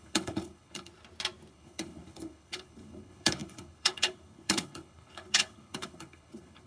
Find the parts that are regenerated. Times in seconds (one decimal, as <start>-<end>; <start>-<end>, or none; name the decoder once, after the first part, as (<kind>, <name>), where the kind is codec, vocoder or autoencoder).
0.0-0.9 (codec, HILCodec); 1.5-6.7